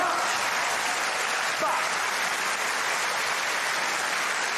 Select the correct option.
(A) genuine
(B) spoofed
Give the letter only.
A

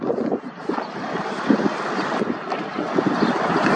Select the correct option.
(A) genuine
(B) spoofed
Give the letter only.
B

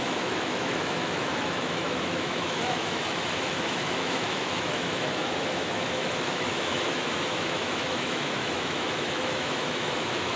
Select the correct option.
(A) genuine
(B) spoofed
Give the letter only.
B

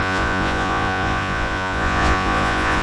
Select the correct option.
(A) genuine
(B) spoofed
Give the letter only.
B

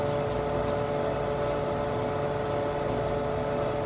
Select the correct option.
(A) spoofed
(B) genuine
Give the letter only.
B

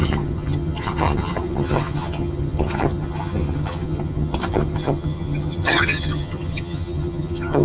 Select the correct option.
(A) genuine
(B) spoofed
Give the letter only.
B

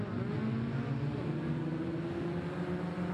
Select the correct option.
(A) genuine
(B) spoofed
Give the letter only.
A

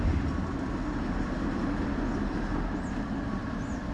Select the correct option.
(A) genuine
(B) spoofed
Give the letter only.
A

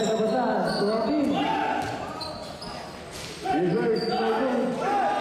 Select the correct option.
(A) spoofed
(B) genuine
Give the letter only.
B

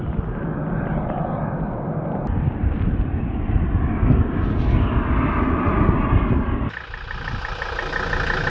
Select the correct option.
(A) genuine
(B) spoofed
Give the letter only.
A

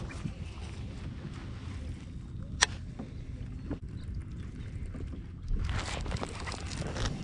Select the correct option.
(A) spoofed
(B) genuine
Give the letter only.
B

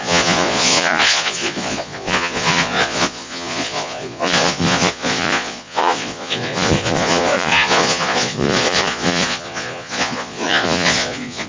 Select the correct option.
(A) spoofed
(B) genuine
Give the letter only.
A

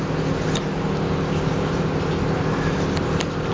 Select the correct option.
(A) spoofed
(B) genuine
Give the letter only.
B